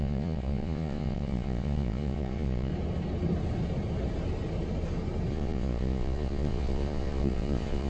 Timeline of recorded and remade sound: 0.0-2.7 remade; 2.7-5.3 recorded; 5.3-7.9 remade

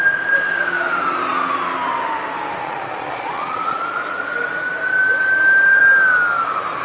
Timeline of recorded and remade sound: 0.0-2.6 recorded; 2.6-4.2 remade; 4.2-6.8 recorded